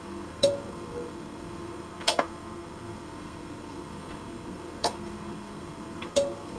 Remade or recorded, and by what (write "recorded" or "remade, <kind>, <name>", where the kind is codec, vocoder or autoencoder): remade, codec, SNAC